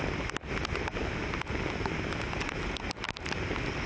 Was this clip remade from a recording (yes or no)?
no